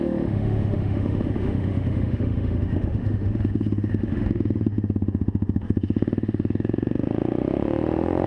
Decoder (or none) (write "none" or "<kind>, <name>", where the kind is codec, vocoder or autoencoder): autoencoder, DAC-VAE